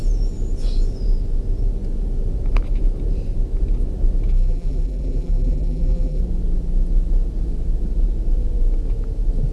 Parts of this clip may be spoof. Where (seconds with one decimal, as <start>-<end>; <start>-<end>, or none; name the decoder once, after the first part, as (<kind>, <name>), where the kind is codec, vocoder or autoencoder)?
4.3-6.2 (vocoder, BigVGAN v2)